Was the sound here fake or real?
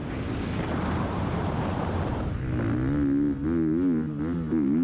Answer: real